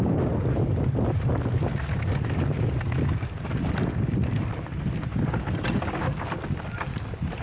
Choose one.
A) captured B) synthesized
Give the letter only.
A